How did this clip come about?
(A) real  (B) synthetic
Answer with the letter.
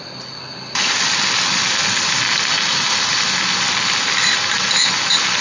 A